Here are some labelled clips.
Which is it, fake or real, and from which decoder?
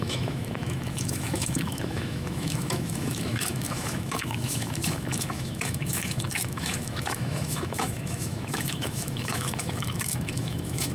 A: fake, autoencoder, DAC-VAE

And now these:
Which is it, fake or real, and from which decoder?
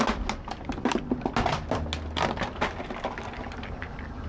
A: real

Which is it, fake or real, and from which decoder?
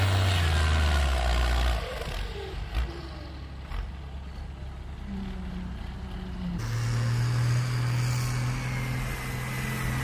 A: real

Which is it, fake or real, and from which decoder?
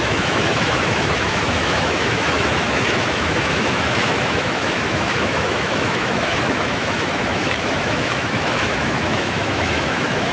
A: fake, autoencoder, DAC-VAE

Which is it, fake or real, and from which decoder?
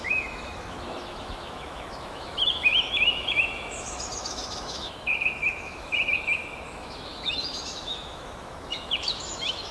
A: fake, autoencoder, DAC-VAE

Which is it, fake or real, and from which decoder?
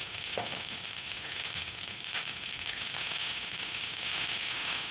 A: fake, autoencoder, DAC-VAE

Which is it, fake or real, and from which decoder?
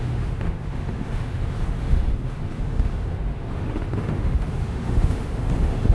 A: fake, autoencoder, DAC-VAE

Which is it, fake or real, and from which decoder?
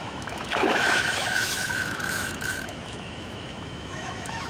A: fake, autoencoder, DAC-VAE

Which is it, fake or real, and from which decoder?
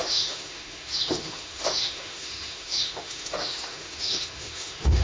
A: fake, autoencoder, DAC-VAE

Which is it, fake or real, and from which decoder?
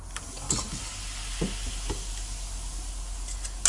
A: real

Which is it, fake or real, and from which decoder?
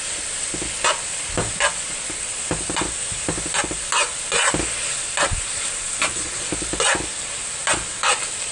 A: real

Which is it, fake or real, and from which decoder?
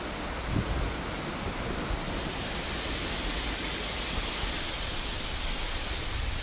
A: real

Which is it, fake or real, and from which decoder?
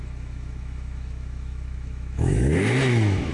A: fake, autoencoder, DAC-VAE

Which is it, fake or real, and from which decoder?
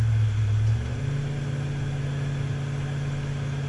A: real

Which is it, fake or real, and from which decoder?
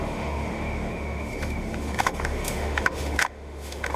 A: fake, autoencoder, DAC-VAE